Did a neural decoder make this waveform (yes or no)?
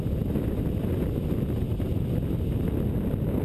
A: no